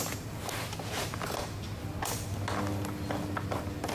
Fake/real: real